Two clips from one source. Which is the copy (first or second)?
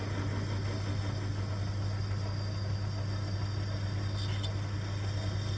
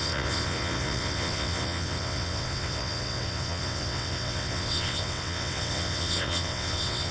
second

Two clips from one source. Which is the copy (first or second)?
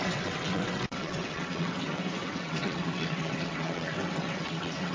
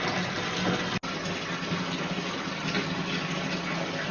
first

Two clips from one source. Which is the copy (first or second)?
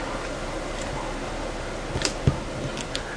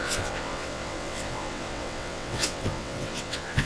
second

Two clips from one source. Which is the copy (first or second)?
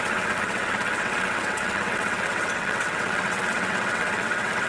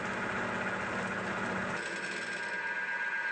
first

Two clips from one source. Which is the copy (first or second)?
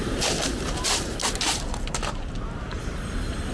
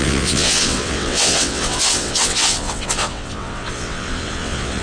second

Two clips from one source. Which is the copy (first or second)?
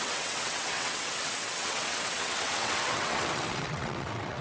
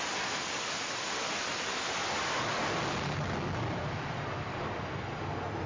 first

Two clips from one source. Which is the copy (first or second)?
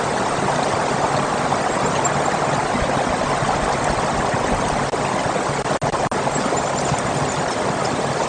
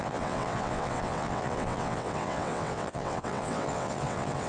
second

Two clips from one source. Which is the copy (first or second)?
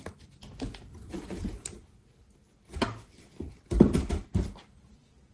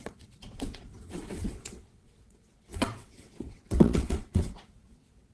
second